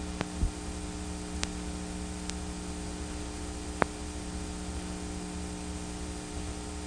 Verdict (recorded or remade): recorded